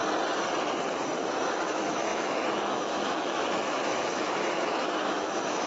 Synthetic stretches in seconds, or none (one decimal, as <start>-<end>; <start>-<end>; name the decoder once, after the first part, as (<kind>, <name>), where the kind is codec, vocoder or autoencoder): 1.3-5.7 (autoencoder, DAC-VAE)